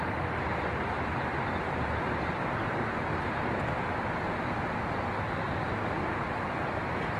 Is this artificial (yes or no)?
no